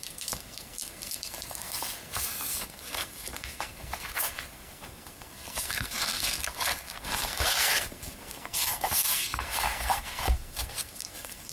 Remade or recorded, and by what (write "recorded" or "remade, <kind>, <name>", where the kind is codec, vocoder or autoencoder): remade, codec, SNAC